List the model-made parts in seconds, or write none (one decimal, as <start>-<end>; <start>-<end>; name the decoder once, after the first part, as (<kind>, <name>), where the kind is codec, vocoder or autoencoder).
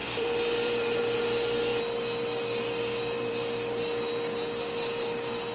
0.0-1.0 (vocoder, BigVGAN v2)